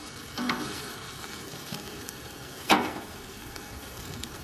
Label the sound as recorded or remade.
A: remade